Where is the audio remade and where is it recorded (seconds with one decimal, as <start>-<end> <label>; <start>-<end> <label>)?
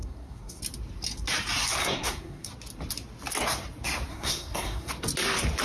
0.0-0.6 remade; 0.6-1.8 recorded; 1.8-2.5 remade; 2.5-4.1 recorded; 4.1-4.9 remade; 4.9-5.6 recorded